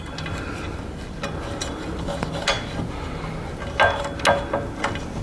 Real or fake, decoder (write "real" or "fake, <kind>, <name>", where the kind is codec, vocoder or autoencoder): real